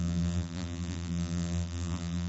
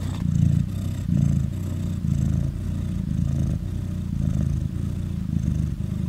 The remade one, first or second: first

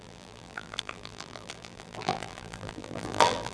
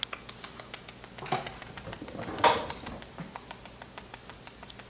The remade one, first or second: first